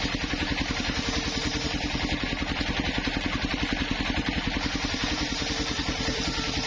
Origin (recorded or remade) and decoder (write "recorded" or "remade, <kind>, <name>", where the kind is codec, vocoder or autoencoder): remade, vocoder, BigVGAN v2